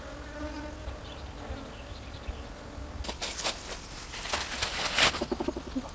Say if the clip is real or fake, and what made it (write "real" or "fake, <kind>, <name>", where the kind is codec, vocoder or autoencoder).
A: real